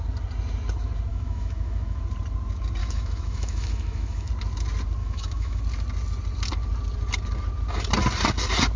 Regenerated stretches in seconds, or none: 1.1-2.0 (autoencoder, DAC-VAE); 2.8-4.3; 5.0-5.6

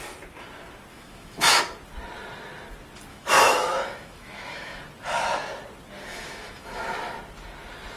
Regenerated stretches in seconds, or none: 0.9-1.6 (autoencoder, DAC-VAE); 3.1-4.8; 6.1-6.8

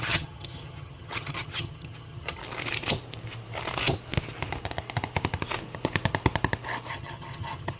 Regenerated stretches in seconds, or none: 0.0-2.4 (vocoder, HiFi-GAN); 6.9-7.8

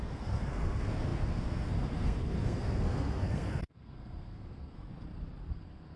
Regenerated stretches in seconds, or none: 0.0-4.9 (codec, SNAC); 5.5-6.0

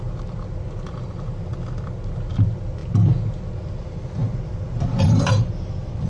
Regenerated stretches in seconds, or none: 4.2-6.1 (vocoder, BigVGAN v2)

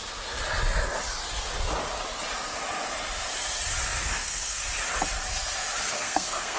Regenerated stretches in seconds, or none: 4.0-4.6 (codec, SNAC); 5.9-6.6

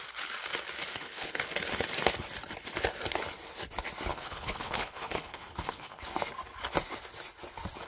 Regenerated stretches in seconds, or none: 0.9-1.4 (codec, HILCodec); 4.1-6.0

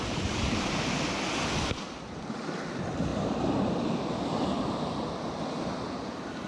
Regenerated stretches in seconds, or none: none